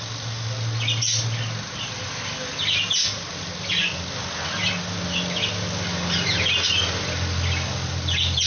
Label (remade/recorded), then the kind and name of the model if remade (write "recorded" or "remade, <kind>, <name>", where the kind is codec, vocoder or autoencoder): recorded